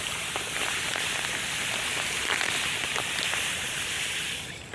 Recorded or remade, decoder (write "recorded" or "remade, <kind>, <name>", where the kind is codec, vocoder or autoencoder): recorded